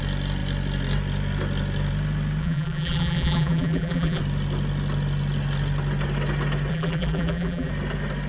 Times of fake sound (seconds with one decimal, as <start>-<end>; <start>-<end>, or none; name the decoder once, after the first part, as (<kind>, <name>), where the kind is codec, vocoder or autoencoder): 2.4-4.2 (vocoder, BigVGAN v2); 6.7-7.7

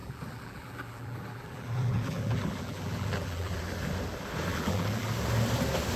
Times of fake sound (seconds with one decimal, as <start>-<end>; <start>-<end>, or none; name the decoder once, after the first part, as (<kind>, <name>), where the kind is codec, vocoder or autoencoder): 0.0-3.6 (vocoder, BigVGAN v2); 4.5-5.1

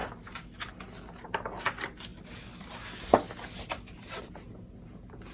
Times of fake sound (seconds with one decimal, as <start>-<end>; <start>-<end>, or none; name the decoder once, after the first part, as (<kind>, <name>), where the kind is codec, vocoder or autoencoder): none

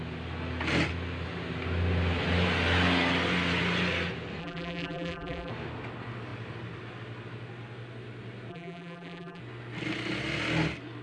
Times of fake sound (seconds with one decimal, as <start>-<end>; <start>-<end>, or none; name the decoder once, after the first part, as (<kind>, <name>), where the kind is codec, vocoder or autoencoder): 4.4-5.5 (vocoder, BigVGAN v2); 8.5-9.4

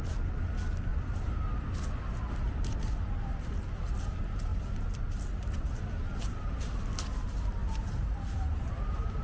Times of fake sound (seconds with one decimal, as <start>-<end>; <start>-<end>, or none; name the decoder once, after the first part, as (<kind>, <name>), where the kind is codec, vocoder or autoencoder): 0.9-2.8 (vocoder, BigVGAN v2)